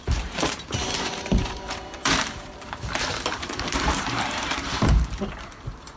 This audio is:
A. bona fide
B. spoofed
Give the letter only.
B